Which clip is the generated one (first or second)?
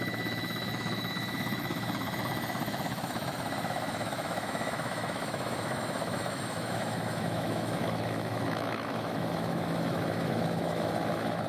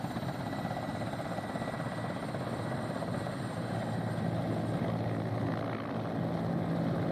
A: first